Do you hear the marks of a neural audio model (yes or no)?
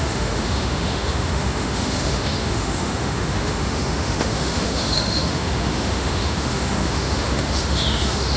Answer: yes